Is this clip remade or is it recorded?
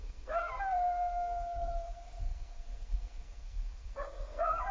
remade